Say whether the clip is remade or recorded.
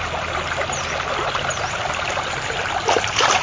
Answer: recorded